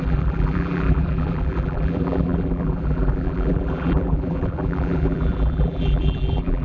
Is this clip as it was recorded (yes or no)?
no